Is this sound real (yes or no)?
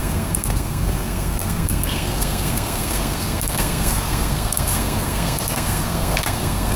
no